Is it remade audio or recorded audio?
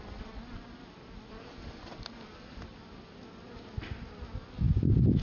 recorded